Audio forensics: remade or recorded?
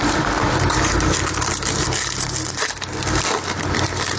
recorded